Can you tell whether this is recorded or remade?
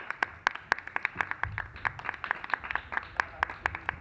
recorded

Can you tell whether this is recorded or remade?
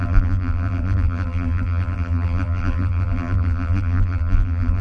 remade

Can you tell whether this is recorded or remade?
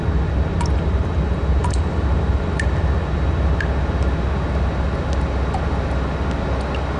recorded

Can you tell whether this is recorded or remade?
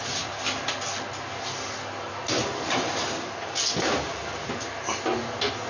recorded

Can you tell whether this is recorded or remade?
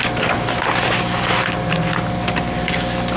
recorded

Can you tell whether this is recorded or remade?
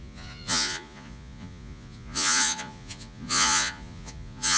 remade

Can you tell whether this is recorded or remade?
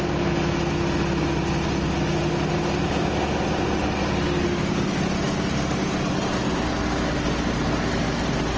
recorded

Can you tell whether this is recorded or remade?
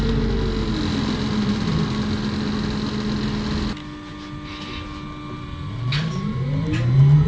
recorded